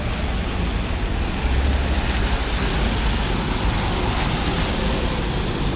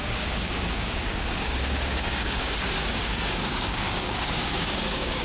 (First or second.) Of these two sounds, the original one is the first